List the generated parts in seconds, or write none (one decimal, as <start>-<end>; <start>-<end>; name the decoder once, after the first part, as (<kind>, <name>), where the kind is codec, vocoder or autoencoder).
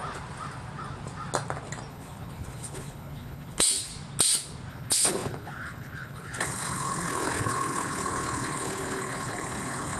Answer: 1.9-3.9 (codec, HILCodec); 4.7-10.0